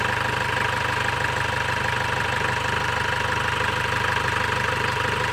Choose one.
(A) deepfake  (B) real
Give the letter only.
B